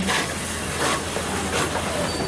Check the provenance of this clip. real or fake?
real